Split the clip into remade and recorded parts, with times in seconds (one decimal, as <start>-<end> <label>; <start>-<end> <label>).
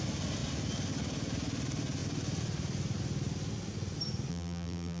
0.0-4.3 recorded; 4.3-5.0 remade